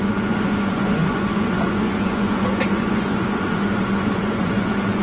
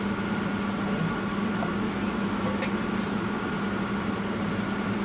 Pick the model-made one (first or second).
first